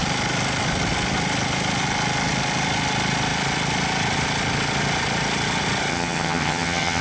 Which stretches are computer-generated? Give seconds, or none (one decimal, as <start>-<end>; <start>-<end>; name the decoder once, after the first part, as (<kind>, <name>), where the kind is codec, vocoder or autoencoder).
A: 5.9-7.0 (vocoder, HiFi-GAN)